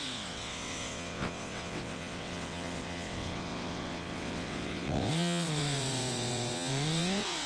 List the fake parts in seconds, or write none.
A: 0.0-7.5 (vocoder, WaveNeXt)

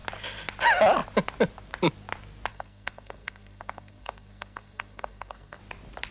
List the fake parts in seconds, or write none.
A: 2.5-5.6 (codec, SNAC)

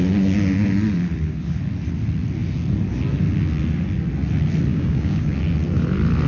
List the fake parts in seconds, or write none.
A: 4.7-5.4 (codec, DAC)

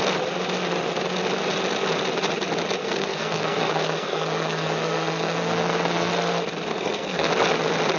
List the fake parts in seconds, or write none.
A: 2.8-6.1 (codec, SNAC); 6.7-7.3

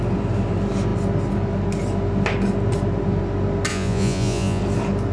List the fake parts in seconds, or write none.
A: 3.7-4.6 (vocoder, Vocos)